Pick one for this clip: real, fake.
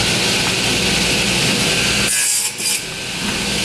real